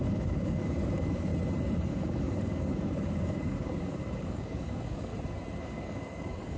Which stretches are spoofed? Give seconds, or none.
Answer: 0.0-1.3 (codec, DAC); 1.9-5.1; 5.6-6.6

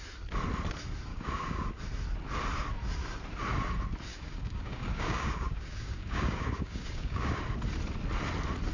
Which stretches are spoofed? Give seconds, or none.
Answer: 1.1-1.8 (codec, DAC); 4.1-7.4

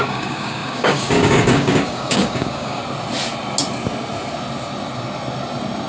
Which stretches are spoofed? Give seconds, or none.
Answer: 0.0-2.8 (codec, DAC)